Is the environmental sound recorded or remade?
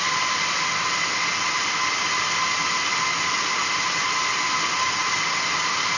recorded